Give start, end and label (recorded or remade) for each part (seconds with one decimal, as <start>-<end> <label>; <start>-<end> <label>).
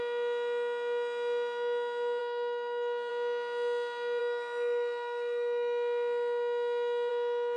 0.0-2.2 recorded; 2.2-3.1 remade; 3.1-4.2 recorded; 4.2-7.1 remade; 7.1-7.6 recorded